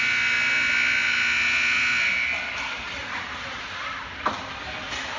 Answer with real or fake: real